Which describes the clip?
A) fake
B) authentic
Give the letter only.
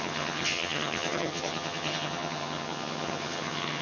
A